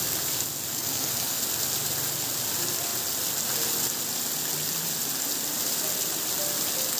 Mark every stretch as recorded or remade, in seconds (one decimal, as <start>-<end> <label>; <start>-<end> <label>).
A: 0.0-0.7 recorded; 0.7-1.4 remade; 1.4-7.0 recorded